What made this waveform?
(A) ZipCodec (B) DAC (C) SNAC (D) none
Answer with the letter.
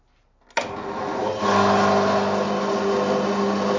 D